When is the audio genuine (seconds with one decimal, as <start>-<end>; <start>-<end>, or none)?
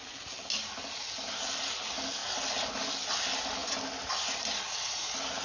0.0-5.4